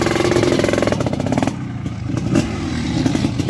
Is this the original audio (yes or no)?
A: yes